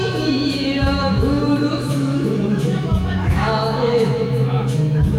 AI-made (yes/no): yes